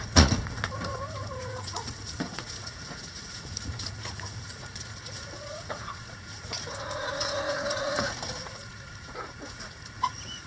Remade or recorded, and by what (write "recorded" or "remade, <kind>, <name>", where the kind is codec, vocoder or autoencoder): remade, vocoder, Vocos